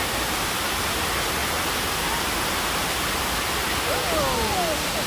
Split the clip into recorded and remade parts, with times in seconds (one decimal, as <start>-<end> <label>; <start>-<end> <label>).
0.0-5.1 recorded